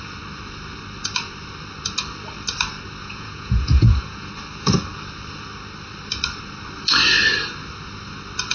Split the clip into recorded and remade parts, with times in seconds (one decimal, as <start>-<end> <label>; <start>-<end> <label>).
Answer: 0.0-3.0 recorded; 3.0-4.3 remade; 4.3-8.5 recorded